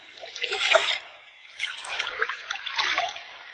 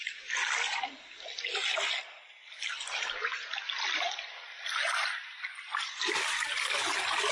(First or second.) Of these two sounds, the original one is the second